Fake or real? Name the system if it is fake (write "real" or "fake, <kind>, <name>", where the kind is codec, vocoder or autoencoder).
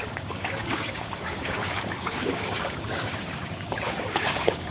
fake, codec, DAC